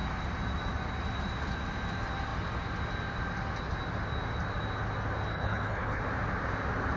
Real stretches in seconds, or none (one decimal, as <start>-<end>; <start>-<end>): 0.0-5.3; 6.0-7.0

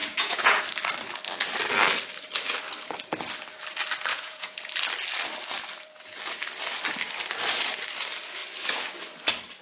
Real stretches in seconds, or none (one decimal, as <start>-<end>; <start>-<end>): 0.6-4.1; 4.7-9.6

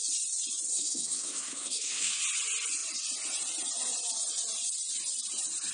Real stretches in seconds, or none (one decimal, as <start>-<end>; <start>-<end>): 0.0-0.7; 2.2-5.7

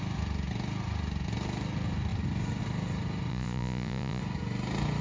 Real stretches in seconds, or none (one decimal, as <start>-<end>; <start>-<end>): 0.0-3.3; 4.2-5.0

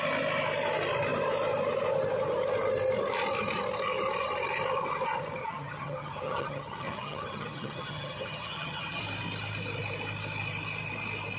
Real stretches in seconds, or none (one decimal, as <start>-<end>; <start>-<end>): 0.0-5.4; 9.0-11.4